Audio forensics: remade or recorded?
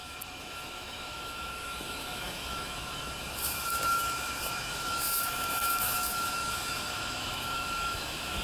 remade